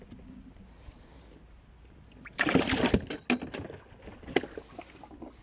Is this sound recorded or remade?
recorded